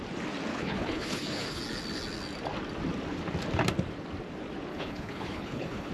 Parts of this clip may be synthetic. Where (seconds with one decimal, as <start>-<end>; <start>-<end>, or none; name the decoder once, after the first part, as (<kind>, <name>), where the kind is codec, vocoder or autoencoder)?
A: 0.5-1.6 (codec, HILCodec); 4.7-5.9